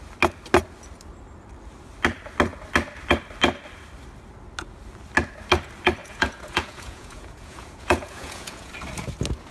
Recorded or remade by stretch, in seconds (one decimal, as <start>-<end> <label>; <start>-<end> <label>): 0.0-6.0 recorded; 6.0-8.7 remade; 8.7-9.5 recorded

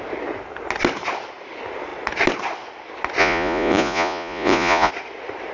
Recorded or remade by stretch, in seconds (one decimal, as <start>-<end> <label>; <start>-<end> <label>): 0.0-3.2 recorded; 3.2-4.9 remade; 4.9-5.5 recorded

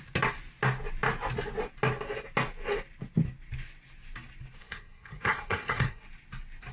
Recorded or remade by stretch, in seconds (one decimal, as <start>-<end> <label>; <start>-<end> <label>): 0.0-4.6 recorded; 4.6-6.0 remade; 6.0-6.7 recorded

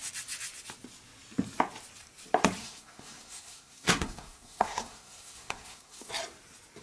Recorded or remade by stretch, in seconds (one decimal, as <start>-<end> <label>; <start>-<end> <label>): 0.0-2.6 recorded; 2.6-6.1 remade; 6.1-6.8 recorded